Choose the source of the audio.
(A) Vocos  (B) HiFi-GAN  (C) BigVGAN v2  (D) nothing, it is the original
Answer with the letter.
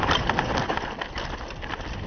D